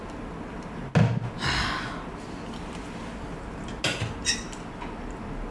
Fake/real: real